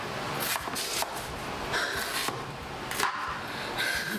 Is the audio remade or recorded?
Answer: recorded